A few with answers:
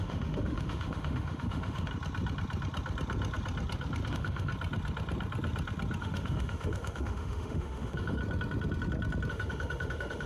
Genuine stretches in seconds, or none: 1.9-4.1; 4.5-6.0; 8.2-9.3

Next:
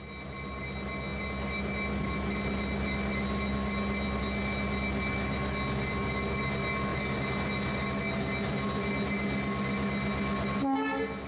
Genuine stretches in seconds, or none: 0.0-11.3

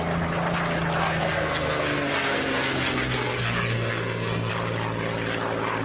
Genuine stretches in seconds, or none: 0.0-1.0; 4.5-5.8

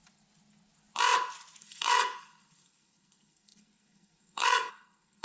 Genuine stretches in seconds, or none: 0.0-1.6

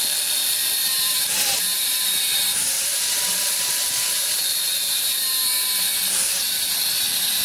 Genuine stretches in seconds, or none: 0.0-0.8; 5.2-6.2

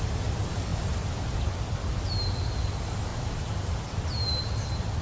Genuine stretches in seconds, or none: 0.0-3.1; 3.7-5.0

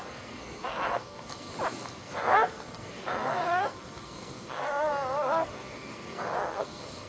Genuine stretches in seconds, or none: 1.5-2.0